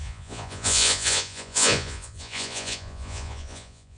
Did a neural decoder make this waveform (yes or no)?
yes